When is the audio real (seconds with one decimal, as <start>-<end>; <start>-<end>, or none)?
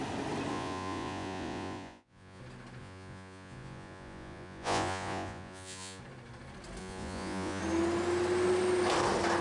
0.0-0.5; 2.4-2.8; 6.0-6.8; 7.6-9.4